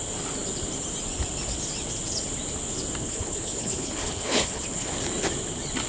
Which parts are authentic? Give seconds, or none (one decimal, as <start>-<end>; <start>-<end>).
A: 0.0-3.0; 4.9-5.9